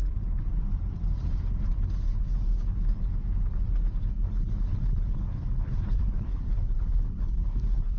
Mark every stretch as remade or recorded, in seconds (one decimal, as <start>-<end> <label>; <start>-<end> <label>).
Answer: 0.0-4.1 recorded; 4.1-8.0 remade